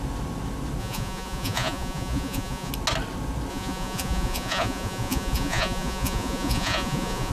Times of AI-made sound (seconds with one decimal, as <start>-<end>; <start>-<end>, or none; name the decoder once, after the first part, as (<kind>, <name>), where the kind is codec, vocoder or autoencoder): 0.8-2.7 (vocoder, Vocos); 3.5-7.3